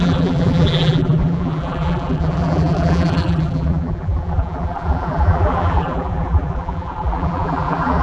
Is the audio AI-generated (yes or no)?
yes